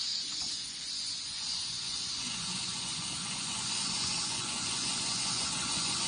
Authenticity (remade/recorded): remade